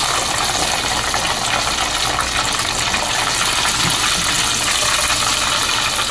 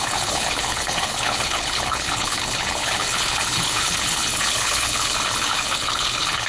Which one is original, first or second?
first